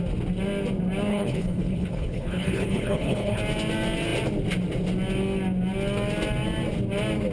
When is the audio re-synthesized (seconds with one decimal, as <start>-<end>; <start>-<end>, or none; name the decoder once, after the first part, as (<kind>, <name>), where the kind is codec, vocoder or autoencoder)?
1.1-3.4 (codec, HILCodec)